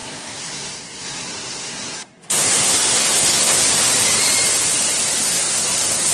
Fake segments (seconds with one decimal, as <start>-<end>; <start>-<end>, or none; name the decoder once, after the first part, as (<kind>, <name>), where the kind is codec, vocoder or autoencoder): 0.0-3.6 (codec, SNAC); 5.2-6.1